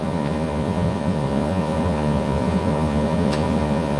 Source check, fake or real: fake